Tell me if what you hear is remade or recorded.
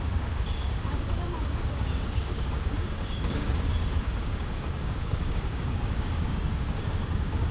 remade